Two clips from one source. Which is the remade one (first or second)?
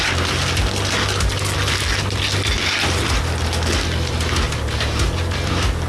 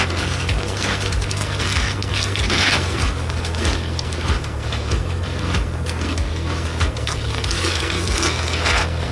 second